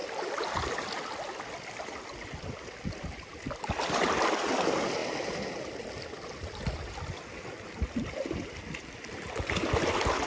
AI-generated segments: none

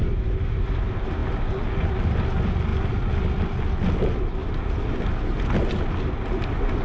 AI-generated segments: none